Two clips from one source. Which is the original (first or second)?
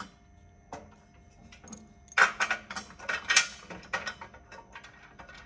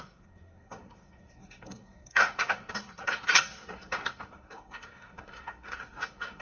first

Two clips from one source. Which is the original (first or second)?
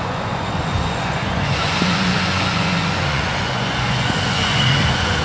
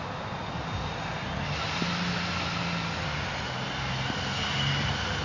second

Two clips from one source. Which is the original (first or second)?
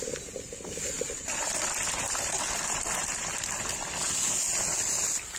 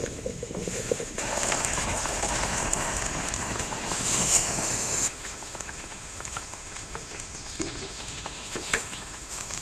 first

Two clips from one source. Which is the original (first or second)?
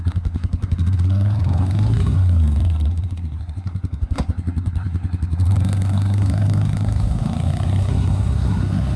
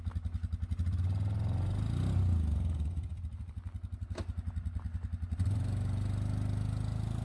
second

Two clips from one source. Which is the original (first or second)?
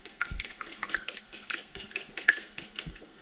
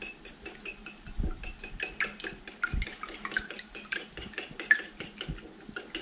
second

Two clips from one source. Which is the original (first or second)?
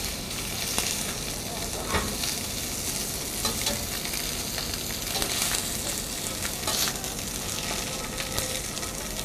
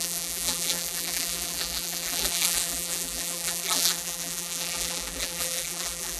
first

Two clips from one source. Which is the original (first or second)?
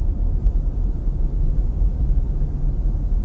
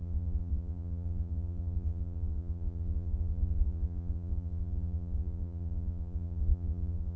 first